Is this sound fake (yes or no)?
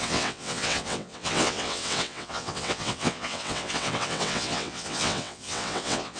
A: yes